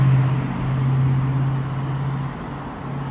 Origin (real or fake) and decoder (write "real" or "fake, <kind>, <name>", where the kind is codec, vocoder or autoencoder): real